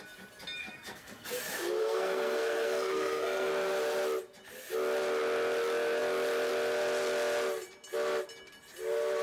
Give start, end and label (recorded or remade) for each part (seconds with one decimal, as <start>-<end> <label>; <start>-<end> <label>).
0.0-0.6 recorded; 0.6-1.4 remade; 1.4-1.8 recorded; 1.8-3.5 remade; 3.5-9.2 recorded